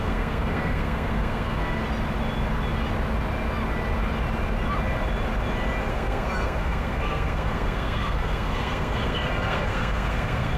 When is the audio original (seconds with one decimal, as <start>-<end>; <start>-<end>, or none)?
1.8-5.9

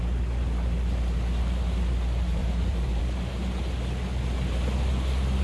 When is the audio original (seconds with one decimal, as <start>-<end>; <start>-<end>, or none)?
0.0-2.4; 3.0-5.4